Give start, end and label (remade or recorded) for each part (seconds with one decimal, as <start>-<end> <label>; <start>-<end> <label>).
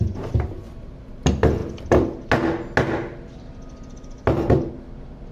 0.0-5.3 recorded